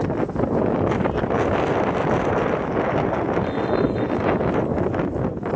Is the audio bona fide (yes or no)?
yes